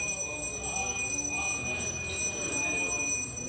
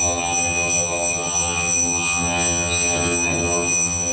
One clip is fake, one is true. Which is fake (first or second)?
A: second